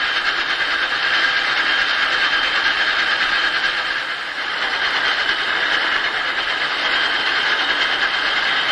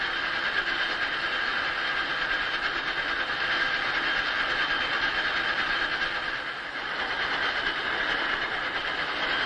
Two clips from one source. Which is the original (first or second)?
second